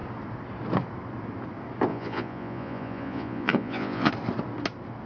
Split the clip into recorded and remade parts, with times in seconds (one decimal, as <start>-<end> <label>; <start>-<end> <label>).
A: 0.0-1.9 recorded; 1.9-4.1 remade; 4.1-5.1 recorded